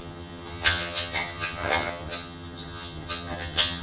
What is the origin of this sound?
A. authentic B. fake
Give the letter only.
B